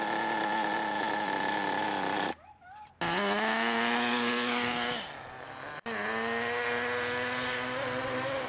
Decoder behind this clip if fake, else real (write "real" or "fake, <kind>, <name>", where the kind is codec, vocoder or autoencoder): real